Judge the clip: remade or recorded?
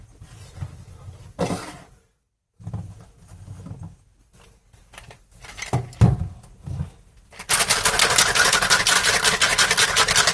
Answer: recorded